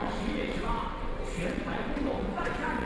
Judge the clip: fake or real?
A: fake